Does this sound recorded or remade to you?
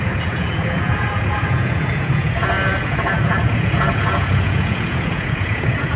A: remade